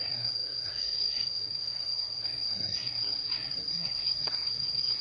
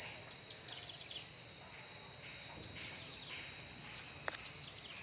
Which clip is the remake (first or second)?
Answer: first